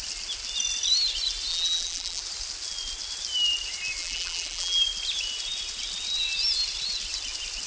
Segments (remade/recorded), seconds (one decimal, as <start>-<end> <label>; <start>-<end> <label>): 0.0-1.5 recorded; 1.5-2.2 remade; 2.2-4.0 recorded; 4.0-4.8 remade; 4.8-7.7 recorded